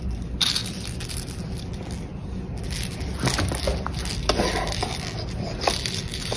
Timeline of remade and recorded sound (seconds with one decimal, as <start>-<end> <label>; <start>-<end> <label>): 0.0-6.4 recorded